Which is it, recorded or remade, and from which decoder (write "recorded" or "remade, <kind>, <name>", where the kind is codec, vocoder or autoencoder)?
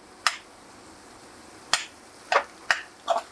recorded